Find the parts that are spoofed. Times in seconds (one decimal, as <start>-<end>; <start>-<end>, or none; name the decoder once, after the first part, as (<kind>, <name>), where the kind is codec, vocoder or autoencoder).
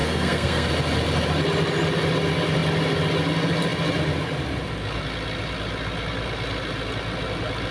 0.0-0.7 (codec, SNAC)